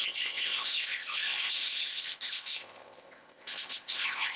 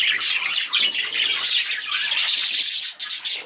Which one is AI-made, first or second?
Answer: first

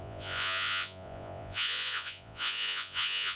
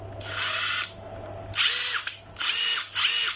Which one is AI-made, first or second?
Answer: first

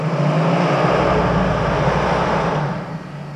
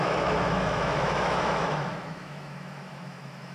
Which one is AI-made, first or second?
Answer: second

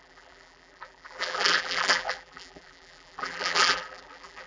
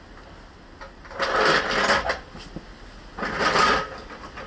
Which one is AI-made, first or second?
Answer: first